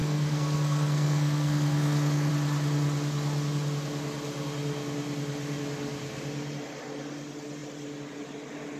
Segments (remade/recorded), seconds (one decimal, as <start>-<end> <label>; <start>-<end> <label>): 0.0-2.3 remade; 2.3-8.8 recorded